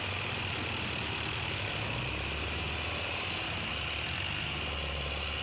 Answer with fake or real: real